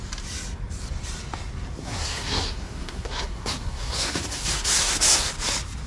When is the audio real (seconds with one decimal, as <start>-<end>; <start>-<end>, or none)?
0.0-1.8; 5.3-5.9